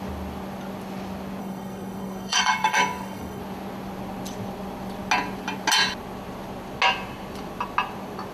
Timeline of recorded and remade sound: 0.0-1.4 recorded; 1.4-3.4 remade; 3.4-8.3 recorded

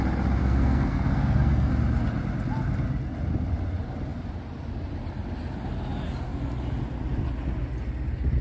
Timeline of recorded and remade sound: 0.0-0.4 recorded; 0.4-1.7 remade; 1.7-8.4 recorded

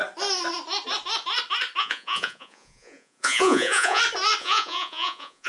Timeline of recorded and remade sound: 0.0-1.8 recorded; 1.8-4.0 remade; 4.0-4.4 recorded; 4.4-5.5 remade

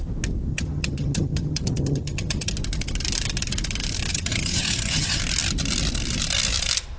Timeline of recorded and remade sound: 0.0-0.5 recorded; 0.5-2.5 remade; 2.5-4.1 recorded; 4.1-5.2 remade; 5.2-7.0 recorded

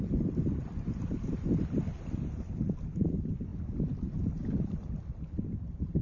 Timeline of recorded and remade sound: 0.0-6.0 recorded

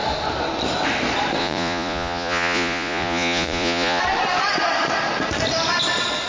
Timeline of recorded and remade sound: 0.0-1.4 recorded; 1.4-4.0 remade; 4.0-6.3 recorded

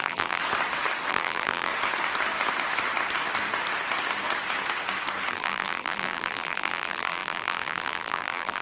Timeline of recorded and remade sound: 0.0-0.4 remade; 0.4-1.1 recorded; 1.1-1.7 remade; 1.7-5.3 recorded; 5.3-8.6 remade